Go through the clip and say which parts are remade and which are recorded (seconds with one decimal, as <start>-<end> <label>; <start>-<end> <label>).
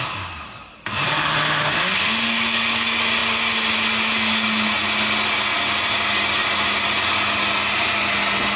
0.0-8.6 recorded